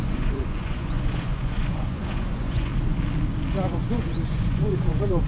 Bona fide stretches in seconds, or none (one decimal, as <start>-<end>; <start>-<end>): 2.7-3.5